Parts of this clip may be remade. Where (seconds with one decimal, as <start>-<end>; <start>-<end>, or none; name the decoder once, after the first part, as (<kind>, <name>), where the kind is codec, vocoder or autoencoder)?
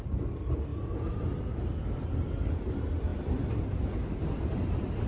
none